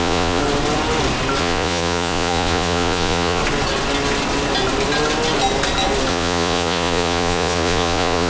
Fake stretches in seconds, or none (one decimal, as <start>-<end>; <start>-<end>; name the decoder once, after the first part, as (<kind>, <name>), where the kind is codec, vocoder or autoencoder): 0.0-0.4 (vocoder, Vocos); 1.4-3.4; 6.1-8.3